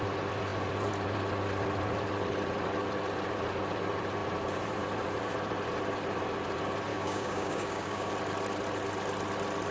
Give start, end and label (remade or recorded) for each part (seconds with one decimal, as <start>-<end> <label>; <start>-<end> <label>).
0.0-6.9 recorded; 6.9-8.1 remade; 8.1-9.7 recorded